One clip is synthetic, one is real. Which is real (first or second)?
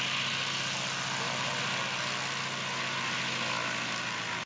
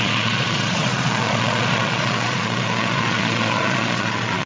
first